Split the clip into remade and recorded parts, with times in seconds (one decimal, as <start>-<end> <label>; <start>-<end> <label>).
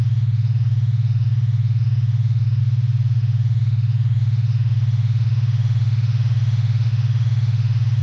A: 0.0-2.6 remade; 2.6-3.2 recorded; 3.2-8.0 remade